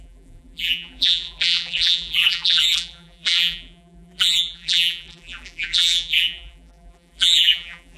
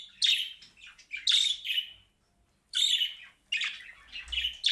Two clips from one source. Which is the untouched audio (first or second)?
second